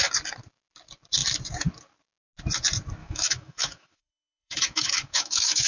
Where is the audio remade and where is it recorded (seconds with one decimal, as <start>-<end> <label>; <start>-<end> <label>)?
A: 0.0-3.0 recorded; 3.0-5.7 remade